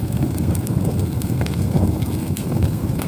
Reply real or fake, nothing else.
fake